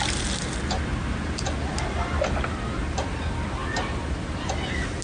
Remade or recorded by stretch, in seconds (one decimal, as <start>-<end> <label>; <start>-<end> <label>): 0.0-5.0 recorded